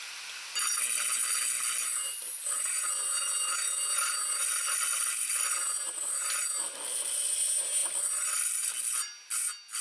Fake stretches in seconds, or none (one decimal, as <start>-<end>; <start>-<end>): none